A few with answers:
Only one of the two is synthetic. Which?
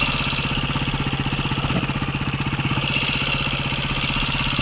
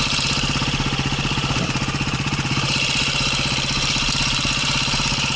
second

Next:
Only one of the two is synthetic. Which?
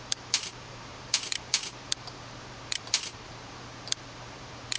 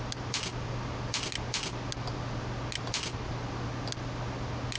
first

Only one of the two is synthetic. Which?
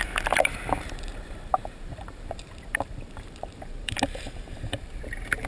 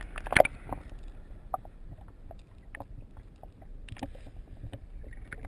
first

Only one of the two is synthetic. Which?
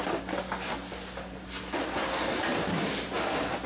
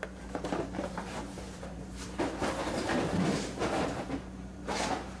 second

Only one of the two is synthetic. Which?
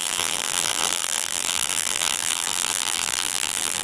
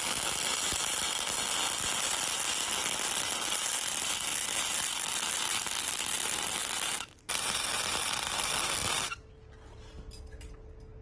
first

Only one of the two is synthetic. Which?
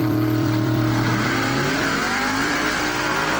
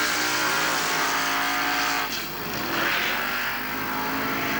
first